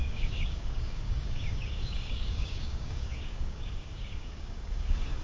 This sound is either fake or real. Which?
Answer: fake